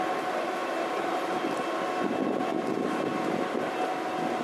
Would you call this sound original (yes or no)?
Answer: yes